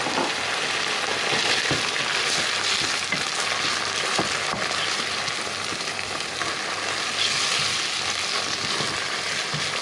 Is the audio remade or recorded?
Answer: recorded